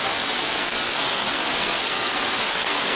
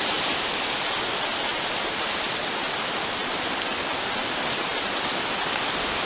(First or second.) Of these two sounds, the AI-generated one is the first